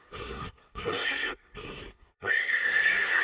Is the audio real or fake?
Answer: fake